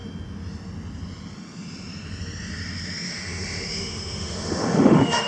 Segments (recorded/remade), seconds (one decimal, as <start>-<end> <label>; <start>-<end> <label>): 0.0-3.1 recorded; 3.1-5.3 remade